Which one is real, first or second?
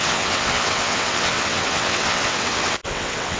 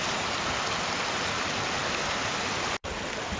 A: second